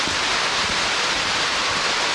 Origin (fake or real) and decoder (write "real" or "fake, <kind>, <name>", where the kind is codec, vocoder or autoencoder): real